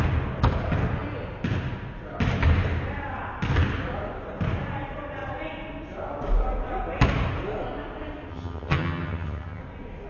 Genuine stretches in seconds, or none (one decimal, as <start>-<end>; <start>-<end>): 0.0-8.3; 9.6-10.1